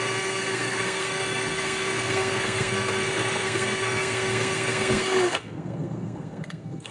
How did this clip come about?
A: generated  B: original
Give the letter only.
A